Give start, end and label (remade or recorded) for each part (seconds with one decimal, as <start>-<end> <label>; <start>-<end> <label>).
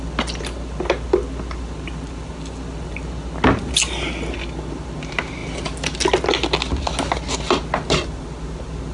0.0-8.9 recorded